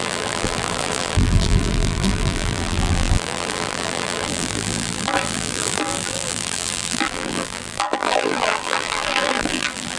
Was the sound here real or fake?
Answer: fake